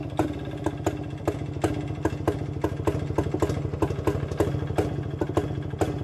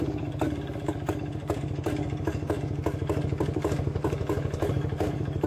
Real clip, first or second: first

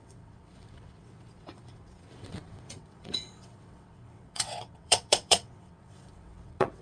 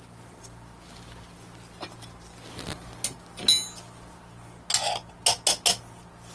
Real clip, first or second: second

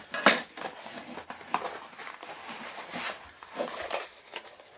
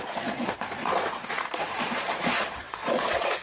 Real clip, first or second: first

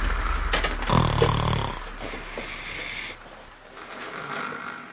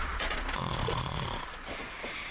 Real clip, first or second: first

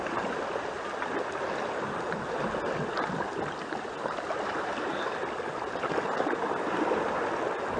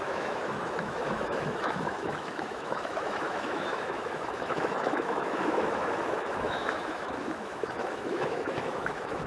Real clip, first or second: first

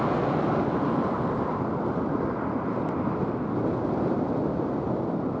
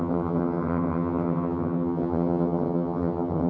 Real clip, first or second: first